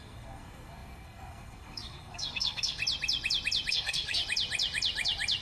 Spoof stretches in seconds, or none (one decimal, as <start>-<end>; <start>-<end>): 0.0-2.8; 3.7-4.2